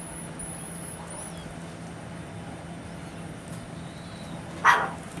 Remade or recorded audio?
recorded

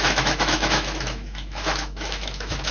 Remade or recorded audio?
remade